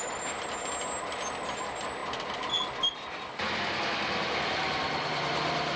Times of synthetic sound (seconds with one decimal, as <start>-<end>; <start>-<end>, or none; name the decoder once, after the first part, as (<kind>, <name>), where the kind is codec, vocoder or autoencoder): none